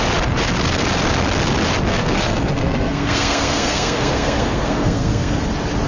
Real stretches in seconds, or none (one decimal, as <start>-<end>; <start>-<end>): 0.0-1.9; 5.4-5.9